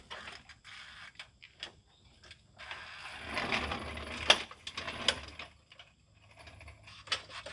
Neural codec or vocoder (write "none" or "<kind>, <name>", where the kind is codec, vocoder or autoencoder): none